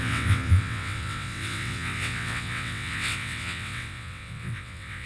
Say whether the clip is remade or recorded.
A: remade